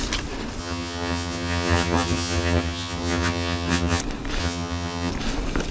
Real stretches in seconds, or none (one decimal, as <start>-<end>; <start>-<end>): 0.0-0.6; 4.0-4.4; 5.1-5.7